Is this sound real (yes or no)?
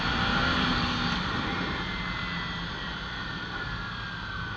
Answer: yes